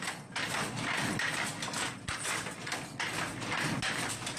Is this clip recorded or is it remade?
recorded